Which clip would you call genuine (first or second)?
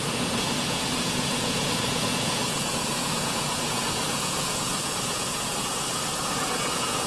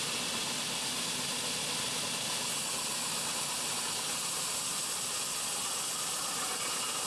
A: second